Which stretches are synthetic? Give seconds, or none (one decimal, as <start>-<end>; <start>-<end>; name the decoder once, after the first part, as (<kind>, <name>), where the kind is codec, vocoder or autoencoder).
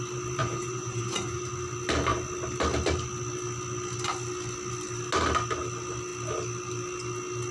0.4-1.4 (vocoder, Vocos)